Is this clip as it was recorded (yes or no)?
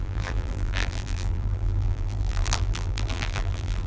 no